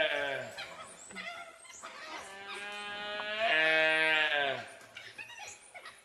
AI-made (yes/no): no